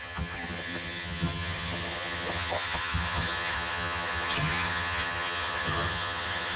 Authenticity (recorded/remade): remade